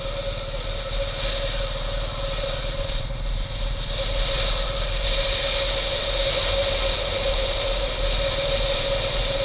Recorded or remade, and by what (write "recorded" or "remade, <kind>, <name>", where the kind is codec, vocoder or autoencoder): recorded